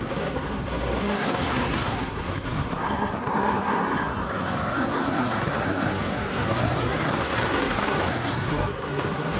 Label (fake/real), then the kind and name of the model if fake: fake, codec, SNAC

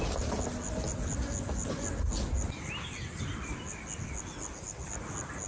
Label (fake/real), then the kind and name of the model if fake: real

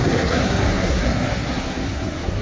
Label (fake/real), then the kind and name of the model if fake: fake, codec, SNAC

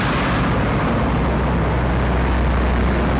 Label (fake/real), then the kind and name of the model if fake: real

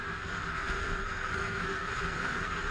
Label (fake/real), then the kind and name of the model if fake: fake, codec, SNAC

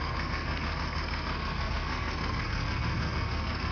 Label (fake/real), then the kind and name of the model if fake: fake, codec, SNAC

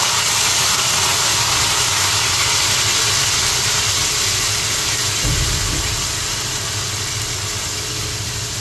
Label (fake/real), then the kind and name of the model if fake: real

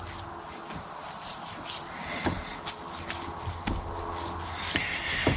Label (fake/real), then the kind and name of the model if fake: real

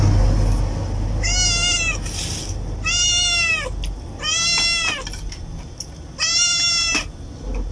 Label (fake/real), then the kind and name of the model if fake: real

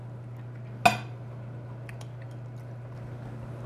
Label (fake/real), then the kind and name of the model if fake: real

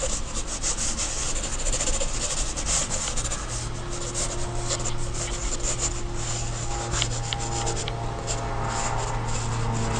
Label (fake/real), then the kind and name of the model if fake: real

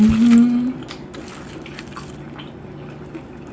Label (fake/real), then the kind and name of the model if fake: real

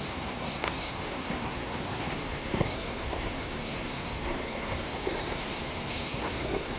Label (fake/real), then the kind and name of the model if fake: fake, codec, SNAC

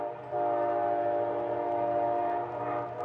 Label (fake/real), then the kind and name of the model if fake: real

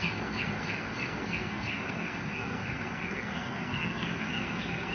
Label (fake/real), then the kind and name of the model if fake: fake, codec, SNAC